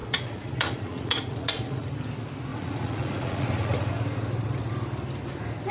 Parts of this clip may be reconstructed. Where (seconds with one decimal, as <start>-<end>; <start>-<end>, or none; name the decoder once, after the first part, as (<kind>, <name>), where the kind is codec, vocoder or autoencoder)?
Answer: 0.0-1.9 (vocoder, Vocos); 2.5-3.9